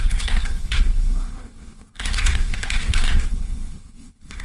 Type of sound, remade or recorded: remade